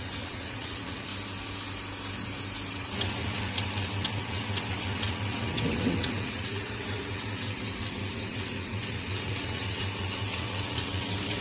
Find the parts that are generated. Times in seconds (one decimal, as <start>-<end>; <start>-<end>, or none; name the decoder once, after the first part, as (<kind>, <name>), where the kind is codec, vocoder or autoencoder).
0.0-1.1 (vocoder, WaveNeXt); 2.7-11.4